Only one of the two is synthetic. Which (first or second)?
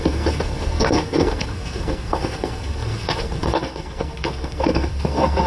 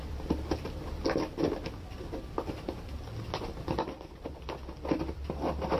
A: first